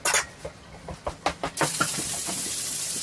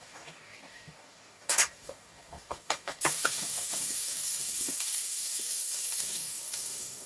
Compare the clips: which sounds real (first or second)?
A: first